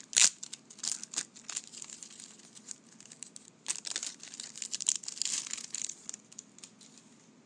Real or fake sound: real